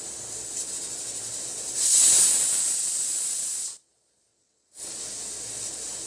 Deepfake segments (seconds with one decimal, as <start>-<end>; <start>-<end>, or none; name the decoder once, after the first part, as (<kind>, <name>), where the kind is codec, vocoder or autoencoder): 4.3-4.9 (vocoder, WaveNeXt)